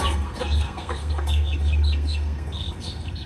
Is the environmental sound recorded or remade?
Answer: remade